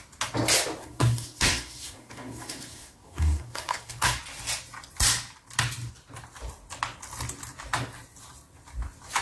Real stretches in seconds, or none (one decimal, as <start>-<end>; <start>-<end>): 0.0-0.8; 4.2-9.2